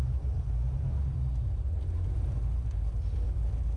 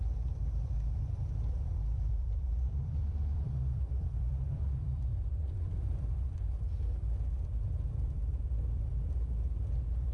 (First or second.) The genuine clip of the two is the first